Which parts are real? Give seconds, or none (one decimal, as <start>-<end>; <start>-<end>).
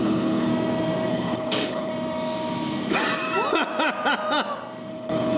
0.5-1.1; 1.9-4.9